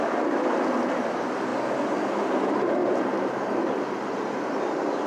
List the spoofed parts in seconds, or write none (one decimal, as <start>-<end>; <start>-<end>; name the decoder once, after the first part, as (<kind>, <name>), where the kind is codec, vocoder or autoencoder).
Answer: 0.0-1.5 (vocoder, BigVGAN v2); 2.1-5.1